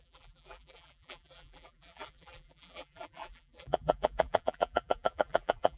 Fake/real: fake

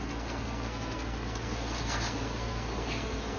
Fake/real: fake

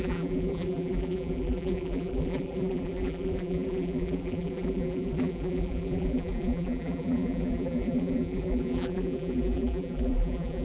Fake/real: fake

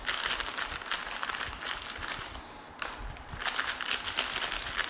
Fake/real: real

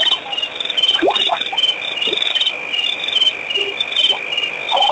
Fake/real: real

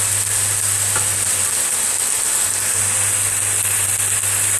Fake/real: real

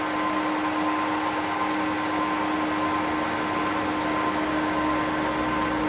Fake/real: real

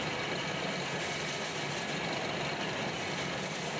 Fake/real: fake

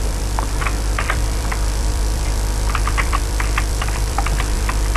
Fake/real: fake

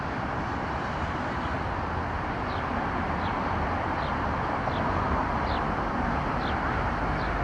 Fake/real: real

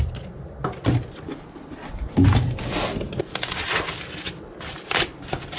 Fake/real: real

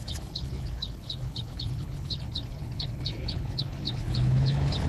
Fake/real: fake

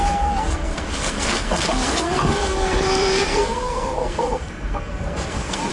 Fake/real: fake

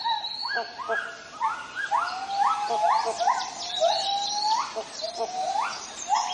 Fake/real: real